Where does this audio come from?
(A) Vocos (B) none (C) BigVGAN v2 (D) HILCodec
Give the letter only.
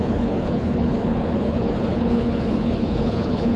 D